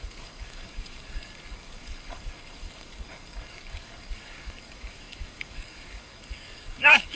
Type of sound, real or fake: fake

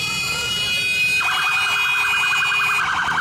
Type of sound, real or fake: real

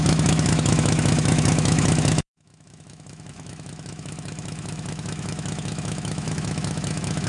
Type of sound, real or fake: fake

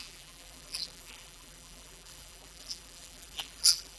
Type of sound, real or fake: fake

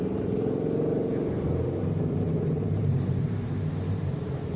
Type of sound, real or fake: fake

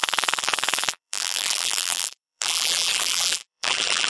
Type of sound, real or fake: fake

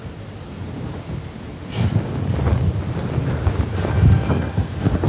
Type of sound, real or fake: real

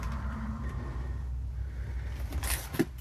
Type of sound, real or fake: real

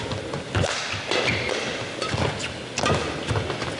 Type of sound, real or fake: real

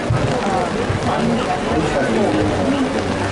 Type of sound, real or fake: real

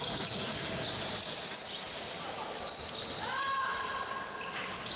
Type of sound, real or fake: real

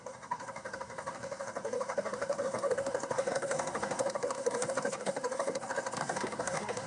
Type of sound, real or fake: fake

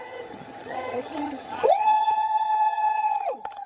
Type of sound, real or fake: fake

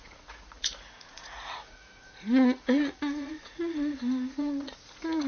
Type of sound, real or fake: fake